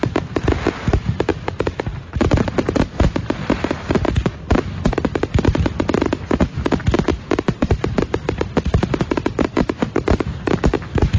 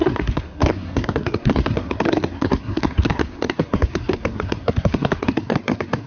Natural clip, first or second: first